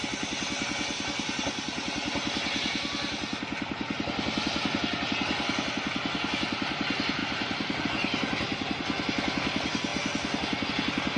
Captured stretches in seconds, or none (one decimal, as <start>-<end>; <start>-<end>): 0.0-11.2